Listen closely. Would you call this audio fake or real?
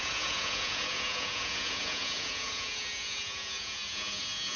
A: fake